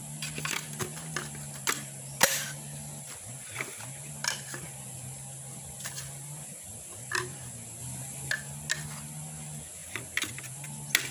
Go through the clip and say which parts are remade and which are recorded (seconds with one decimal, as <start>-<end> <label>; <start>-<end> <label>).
0.0-3.1 remade; 3.1-5.5 recorded; 5.5-7.2 remade; 7.2-7.8 recorded; 7.8-8.3 remade; 8.3-9.8 recorded; 9.8-10.4 remade; 10.4-11.1 recorded